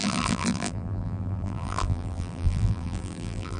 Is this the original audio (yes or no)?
no